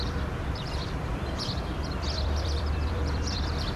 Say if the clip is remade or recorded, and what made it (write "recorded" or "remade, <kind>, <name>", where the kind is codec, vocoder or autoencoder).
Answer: remade, vocoder, BigVGAN v2